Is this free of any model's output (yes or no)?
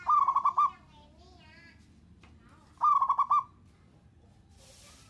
yes